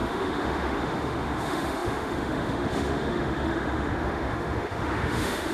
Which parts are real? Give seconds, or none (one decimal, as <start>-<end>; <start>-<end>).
none